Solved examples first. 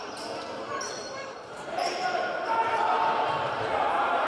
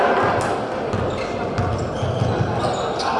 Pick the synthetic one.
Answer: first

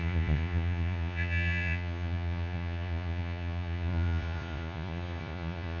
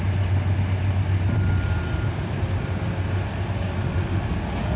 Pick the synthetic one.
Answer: first